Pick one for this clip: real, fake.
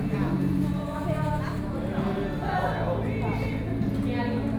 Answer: real